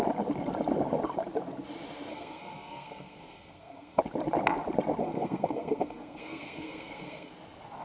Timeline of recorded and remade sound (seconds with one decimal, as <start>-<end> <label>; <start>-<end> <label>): 0.0-2.1 recorded; 2.1-4.0 remade; 4.0-5.0 recorded; 5.0-7.3 remade; 7.3-7.8 recorded